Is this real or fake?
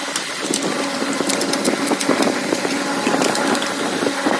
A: real